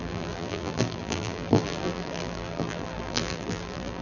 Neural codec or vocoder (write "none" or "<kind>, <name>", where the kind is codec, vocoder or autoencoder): vocoder, BigVGAN v2